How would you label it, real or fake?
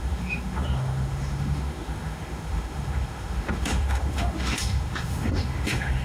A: fake